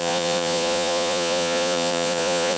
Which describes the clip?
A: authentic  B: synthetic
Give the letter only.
B